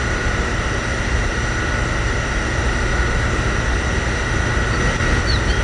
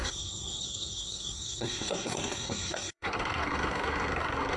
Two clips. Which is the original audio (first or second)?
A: first